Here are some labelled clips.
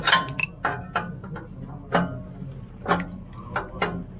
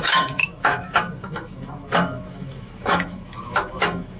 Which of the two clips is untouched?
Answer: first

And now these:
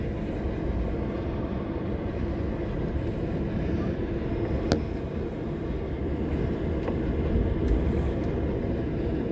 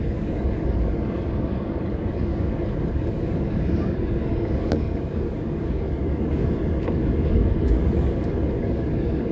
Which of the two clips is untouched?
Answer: first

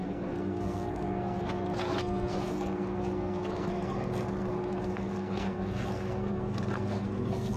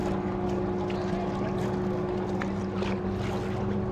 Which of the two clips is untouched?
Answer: second